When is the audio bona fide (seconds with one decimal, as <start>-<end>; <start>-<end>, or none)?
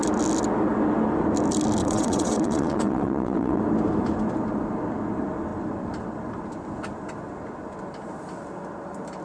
0.0-1.8; 3.6-9.2